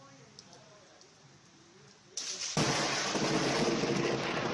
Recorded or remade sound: recorded